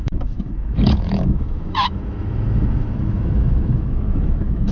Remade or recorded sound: remade